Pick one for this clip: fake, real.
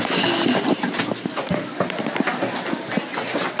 real